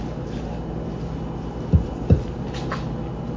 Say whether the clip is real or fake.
real